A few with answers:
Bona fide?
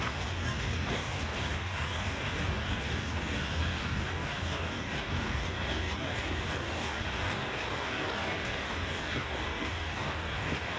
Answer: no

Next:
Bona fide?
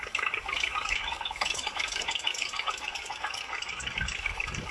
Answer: no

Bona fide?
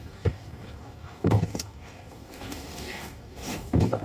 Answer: no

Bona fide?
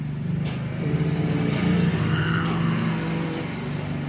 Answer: yes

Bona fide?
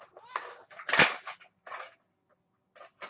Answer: yes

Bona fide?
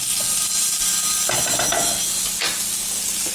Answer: yes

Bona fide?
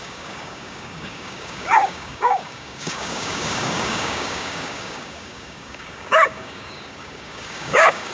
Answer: no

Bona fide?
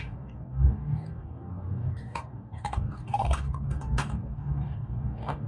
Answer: no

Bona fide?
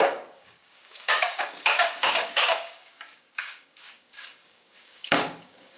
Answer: no